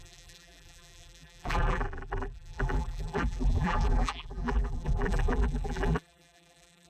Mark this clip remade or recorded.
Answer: remade